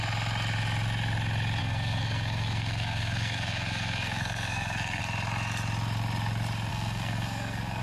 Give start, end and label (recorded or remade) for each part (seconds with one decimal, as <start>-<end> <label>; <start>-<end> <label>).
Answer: 0.0-1.6 recorded; 1.6-5.0 remade; 5.0-6.7 recorded; 6.7-7.8 remade